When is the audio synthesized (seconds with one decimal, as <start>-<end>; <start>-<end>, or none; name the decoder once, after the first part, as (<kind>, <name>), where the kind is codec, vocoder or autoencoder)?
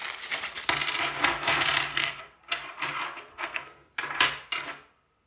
1.9-2.4 (codec, SNAC); 3.3-3.9